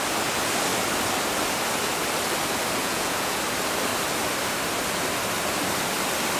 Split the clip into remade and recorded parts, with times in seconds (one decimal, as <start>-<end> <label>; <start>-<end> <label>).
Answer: 0.0-2.8 recorded; 2.8-3.4 remade; 3.4-6.4 recorded